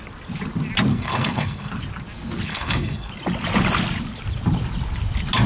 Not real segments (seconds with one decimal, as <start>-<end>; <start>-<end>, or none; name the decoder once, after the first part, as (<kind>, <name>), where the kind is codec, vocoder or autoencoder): 0.9-1.7 (codec, SNAC); 2.5-3.1